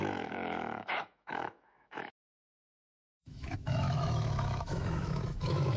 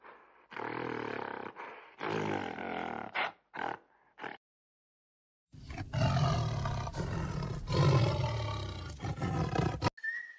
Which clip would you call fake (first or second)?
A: first